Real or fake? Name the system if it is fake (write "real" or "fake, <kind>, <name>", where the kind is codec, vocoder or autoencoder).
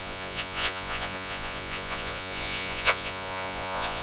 fake, vocoder, Vocos